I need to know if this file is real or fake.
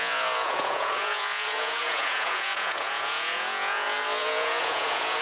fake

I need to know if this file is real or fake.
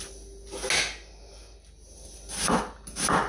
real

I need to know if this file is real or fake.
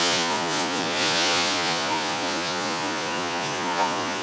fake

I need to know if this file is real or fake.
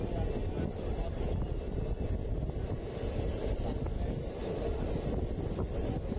real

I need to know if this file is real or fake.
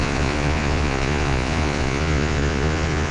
fake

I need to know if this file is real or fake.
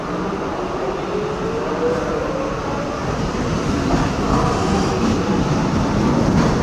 real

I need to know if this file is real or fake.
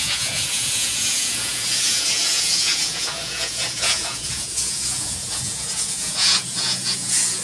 fake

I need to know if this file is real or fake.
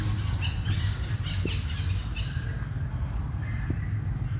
real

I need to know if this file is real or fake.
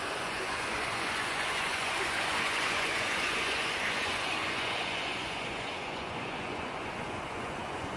fake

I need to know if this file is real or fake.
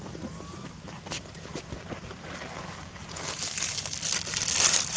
real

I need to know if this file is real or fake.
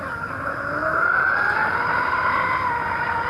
real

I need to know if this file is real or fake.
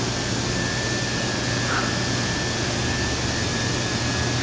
real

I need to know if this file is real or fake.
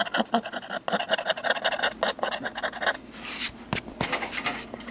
real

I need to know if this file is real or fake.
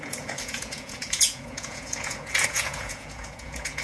fake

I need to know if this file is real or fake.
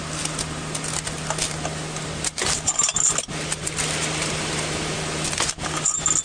real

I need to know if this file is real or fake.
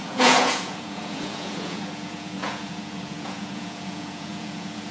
fake